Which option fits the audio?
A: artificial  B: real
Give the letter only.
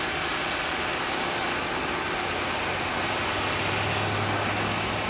B